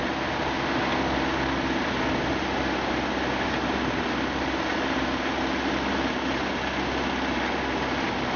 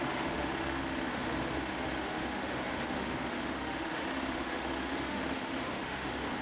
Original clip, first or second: first